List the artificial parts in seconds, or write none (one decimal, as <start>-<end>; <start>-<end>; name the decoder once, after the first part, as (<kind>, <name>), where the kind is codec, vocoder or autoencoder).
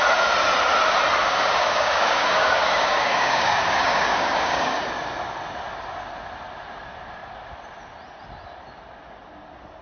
1.2-4.9 (codec, DAC)